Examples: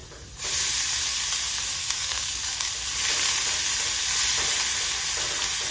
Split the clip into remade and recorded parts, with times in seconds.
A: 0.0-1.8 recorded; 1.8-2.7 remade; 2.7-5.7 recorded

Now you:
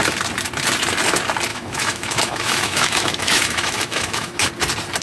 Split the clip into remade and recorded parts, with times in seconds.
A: 0.0-1.5 recorded; 1.5-4.5 remade; 4.5-5.0 recorded